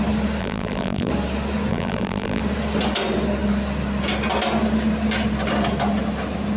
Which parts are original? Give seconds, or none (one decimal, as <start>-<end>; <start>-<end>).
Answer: 0.0-0.4; 1.1-1.7; 2.4-6.6